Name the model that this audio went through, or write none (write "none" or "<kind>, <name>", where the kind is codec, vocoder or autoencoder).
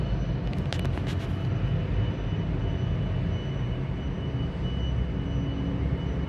none